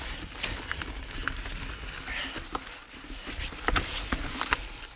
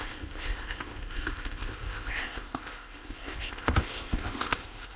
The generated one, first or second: second